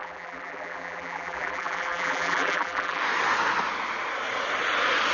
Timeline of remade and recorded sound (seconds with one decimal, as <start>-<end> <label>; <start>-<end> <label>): 0.0-3.0 remade; 3.0-5.1 recorded